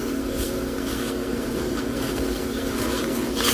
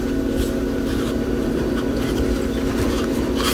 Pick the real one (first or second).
second